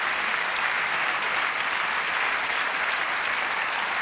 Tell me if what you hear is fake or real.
real